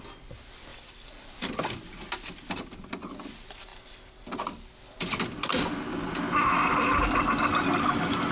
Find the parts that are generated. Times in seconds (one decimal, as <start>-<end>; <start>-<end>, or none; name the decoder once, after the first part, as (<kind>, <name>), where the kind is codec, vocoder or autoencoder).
none